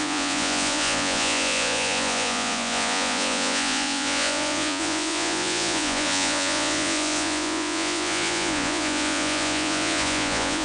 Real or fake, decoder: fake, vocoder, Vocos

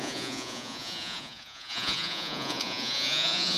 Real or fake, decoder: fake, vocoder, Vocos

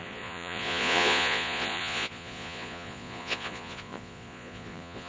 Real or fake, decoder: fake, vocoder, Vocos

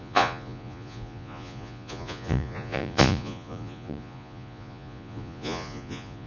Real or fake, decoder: fake, vocoder, Vocos